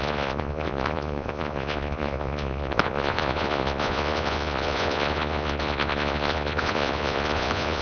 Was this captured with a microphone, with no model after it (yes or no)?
no